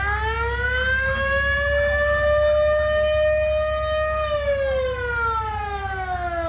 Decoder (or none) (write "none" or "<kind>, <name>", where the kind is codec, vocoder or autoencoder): none